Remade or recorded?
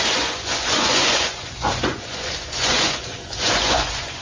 remade